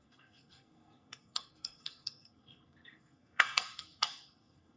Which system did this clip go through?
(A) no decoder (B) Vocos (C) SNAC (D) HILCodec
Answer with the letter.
C